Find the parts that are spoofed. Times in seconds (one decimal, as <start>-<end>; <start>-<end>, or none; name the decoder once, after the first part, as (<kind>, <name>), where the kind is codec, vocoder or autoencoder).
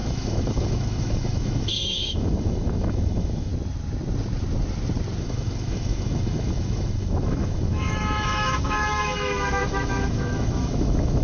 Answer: 0.0-3.5 (autoencoder, DAC-VAE); 5.2-11.2